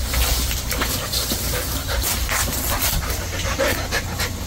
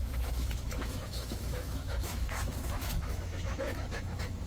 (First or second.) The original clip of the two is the first